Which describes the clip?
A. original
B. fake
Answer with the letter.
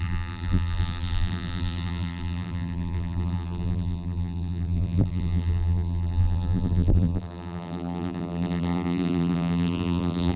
B